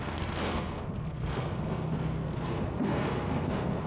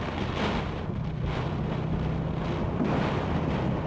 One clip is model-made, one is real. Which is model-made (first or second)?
first